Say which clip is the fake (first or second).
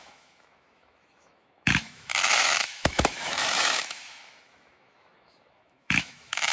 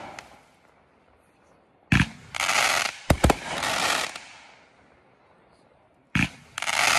first